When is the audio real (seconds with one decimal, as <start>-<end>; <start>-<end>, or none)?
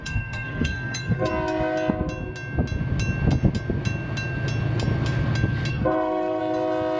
1.3-5.7; 6.4-7.0